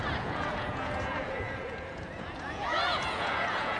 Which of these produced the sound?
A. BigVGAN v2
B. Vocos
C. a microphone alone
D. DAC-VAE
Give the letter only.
B